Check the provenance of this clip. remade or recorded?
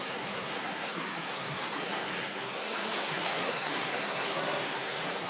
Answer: remade